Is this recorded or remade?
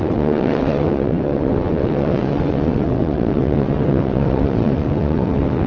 remade